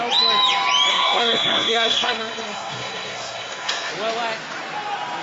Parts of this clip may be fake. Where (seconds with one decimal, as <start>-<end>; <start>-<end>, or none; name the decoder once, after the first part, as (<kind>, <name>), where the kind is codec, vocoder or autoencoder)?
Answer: 0.9-3.9 (codec, SNAC)